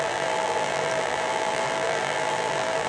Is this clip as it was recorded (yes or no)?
no